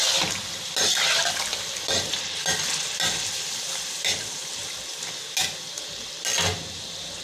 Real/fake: real